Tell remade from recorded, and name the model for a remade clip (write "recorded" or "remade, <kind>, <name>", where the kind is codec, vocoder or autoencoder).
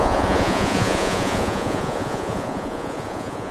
remade, vocoder, Vocos